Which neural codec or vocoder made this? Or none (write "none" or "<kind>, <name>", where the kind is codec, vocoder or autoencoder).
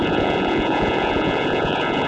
vocoder, Vocos